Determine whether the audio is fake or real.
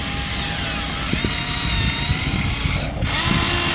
real